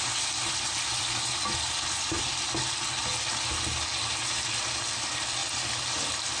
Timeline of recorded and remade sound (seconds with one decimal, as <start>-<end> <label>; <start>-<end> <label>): 0.0-6.4 recorded